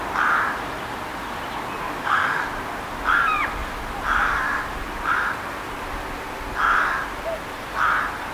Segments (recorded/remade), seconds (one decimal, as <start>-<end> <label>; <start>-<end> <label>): 0.0-1.8 recorded; 1.8-2.4 remade; 2.4-8.3 recorded